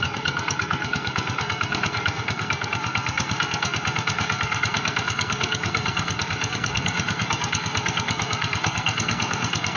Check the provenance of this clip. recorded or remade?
remade